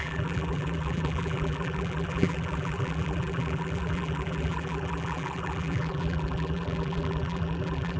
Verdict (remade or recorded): remade